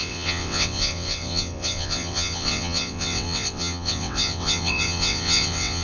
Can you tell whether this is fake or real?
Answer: fake